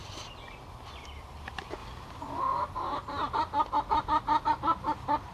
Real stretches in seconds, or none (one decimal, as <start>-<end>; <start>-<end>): 0.0-5.3